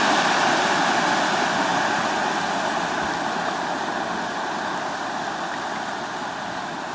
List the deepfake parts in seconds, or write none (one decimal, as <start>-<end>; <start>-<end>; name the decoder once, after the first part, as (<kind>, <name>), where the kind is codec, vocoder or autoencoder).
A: none